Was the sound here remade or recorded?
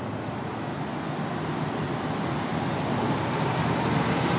recorded